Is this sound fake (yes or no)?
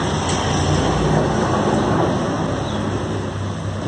no